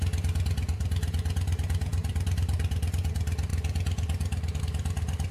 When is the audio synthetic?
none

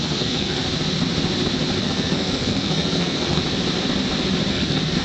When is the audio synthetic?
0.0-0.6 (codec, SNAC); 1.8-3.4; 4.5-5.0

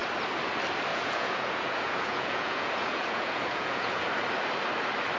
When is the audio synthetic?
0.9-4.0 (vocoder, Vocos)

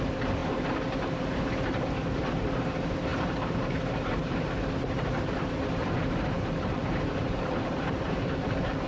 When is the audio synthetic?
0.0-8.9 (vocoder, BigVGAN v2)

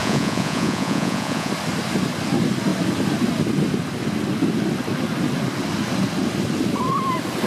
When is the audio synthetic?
0.0-1.5 (vocoder, Vocos)

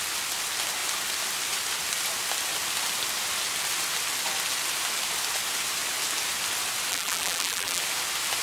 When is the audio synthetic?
6.9-7.8 (vocoder, BigVGAN v2)

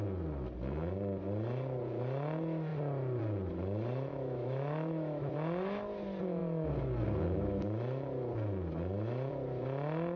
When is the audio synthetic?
4.1-5.3 (autoencoder, DAC-VAE)

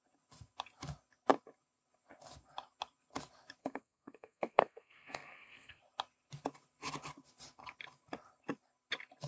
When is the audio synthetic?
3.6-5.8 (codec, SNAC)